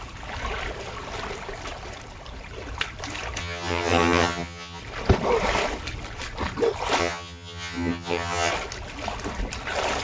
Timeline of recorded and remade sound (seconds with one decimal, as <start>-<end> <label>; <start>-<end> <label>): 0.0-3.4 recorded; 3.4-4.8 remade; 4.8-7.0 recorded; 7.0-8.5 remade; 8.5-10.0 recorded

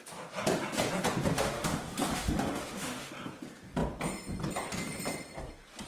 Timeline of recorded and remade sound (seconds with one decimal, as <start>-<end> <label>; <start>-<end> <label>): 0.0-1.3 recorded; 1.3-3.1 remade; 3.1-5.9 recorded

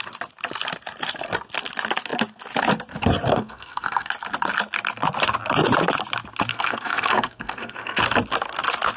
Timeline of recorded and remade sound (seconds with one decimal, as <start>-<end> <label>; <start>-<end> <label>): 0.0-3.3 recorded; 3.3-4.1 remade; 4.1-6.5 recorded; 6.5-8.0 remade; 8.0-9.0 recorded

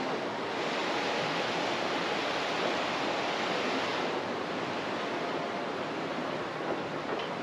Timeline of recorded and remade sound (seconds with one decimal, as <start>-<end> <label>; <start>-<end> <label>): 0.0-0.8 recorded; 0.8-1.8 remade; 1.8-7.4 recorded

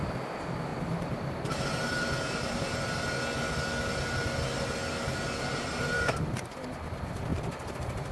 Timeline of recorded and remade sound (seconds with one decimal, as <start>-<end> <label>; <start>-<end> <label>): 0.0-0.7 recorded; 0.7-3.0 remade; 3.0-5.5 recorded; 5.5-6.3 remade; 6.3-7.3 recorded; 7.3-8.1 remade

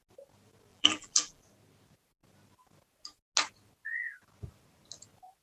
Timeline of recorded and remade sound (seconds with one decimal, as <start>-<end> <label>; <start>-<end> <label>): 0.0-0.7 recorded; 0.7-1.4 remade; 1.4-5.4 recorded

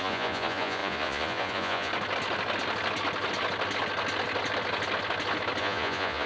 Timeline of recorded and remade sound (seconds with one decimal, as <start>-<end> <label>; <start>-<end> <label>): 0.0-1.9 remade; 1.9-5.6 recorded; 5.6-6.3 remade

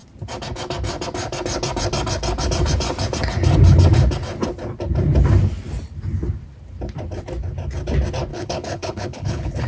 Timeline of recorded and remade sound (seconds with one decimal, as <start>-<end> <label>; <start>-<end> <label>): 0.0-8.3 recorded; 8.3-9.7 remade